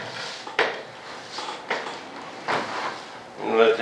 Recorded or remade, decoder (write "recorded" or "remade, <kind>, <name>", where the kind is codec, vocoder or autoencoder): remade, vocoder, BigVGAN v2